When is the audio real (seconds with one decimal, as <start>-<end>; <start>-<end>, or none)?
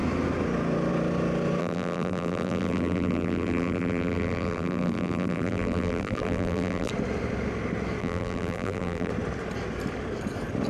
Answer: 0.0-1.6; 6.9-8.0; 9.1-10.7